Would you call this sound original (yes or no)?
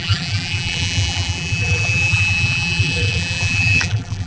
no